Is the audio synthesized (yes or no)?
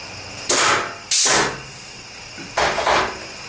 no